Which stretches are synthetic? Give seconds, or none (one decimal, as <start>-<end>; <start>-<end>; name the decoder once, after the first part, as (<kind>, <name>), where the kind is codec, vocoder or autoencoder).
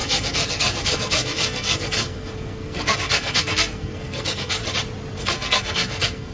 0.0-4.6 (codec, SNAC); 5.2-6.3